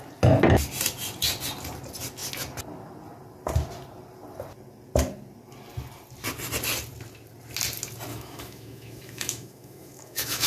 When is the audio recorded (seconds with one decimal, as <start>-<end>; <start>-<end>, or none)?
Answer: 0.0-8.1